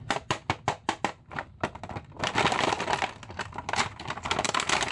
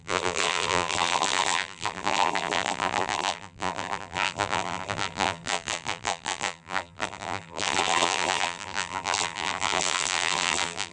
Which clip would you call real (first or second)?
first